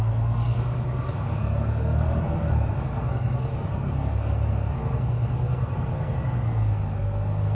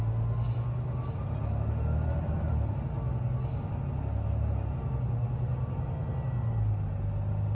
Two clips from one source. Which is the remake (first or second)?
first